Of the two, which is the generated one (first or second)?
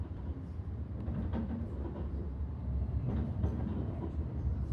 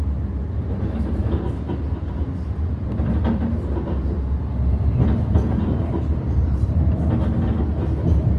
first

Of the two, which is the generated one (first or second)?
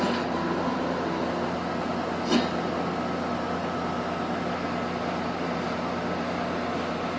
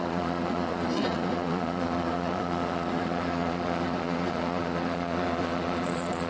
second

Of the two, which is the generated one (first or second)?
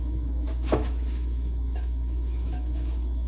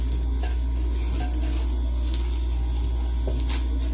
first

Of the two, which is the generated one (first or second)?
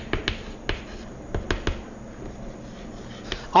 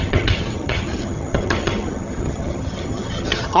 second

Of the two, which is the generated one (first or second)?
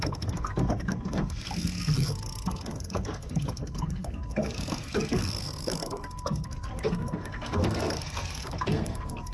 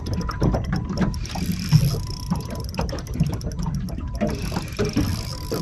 first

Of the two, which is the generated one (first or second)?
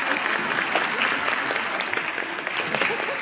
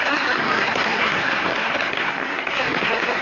second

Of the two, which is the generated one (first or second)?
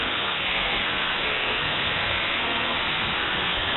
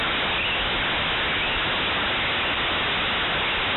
first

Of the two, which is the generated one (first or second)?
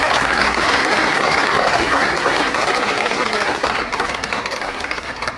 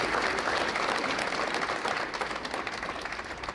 first